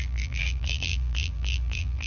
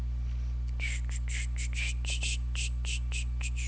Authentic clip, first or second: second